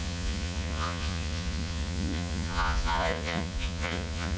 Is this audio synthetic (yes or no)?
yes